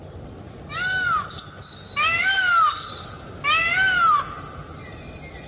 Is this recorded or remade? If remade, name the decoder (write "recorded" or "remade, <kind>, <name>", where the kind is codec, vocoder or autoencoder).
recorded